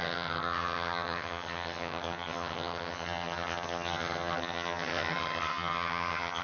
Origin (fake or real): fake